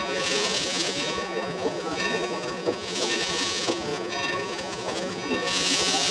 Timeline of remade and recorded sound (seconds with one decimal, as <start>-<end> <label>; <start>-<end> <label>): 0.0-6.1 remade